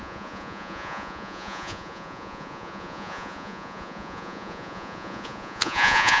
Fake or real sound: fake